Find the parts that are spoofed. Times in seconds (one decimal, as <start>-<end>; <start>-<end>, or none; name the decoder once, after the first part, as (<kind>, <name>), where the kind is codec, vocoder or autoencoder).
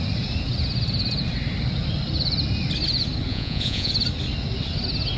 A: 3.3-3.9 (vocoder, Vocos)